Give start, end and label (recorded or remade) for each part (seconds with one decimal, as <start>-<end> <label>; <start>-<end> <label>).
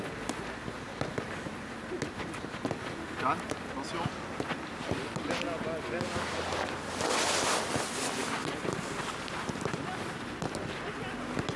0.0-11.6 recorded